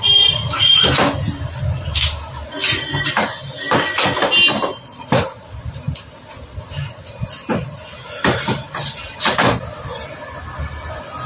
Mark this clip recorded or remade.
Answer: recorded